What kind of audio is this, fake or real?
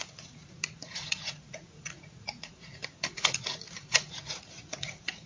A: fake